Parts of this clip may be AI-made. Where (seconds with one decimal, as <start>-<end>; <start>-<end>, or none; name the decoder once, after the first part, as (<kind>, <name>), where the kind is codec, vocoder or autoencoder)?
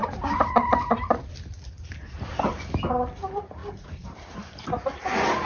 0.0-1.2 (vocoder, BigVGAN v2); 3.6-4.6